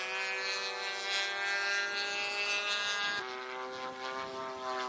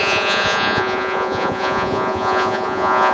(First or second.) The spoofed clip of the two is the second